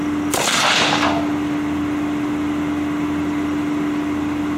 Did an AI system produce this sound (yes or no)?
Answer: no